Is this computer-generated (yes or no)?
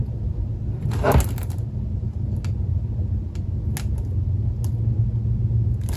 no